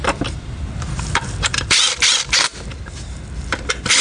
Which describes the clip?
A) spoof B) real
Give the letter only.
B